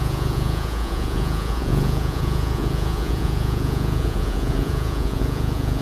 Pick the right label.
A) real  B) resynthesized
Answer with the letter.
B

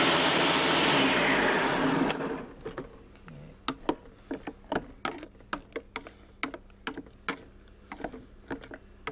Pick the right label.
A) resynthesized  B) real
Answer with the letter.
B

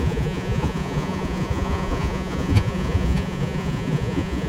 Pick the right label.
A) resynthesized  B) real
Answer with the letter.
A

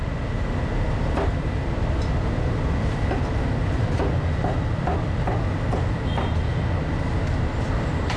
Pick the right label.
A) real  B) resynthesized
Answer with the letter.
A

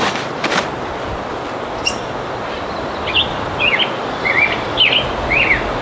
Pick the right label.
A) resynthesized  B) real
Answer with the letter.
A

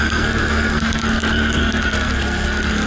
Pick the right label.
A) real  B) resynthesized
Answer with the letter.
B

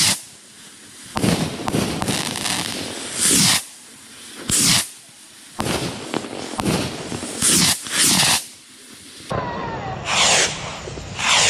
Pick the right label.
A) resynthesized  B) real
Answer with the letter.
B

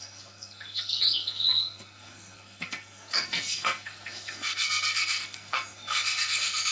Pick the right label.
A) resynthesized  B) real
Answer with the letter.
A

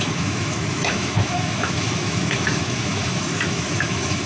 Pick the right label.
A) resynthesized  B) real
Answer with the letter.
A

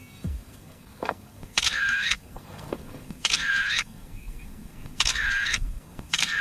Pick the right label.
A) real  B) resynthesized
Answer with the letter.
B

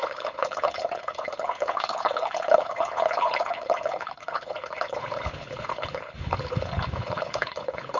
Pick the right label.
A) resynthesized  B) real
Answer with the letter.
A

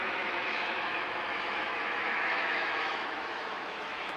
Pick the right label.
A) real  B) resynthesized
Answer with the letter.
B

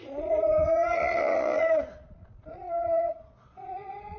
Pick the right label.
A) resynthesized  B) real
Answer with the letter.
A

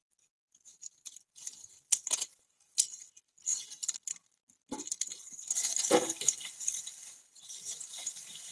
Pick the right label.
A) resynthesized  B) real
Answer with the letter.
B